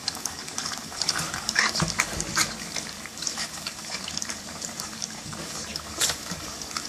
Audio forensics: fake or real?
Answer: fake